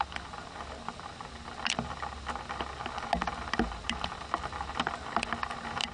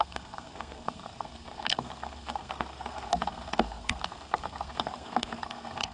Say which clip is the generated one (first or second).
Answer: second